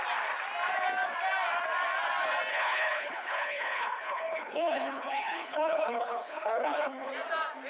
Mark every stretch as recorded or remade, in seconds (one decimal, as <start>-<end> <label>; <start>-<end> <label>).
0.0-2.5 recorded; 2.5-7.1 remade; 7.1-7.7 recorded